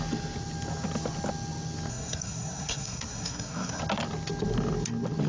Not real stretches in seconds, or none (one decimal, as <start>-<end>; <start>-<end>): 1.9-3.8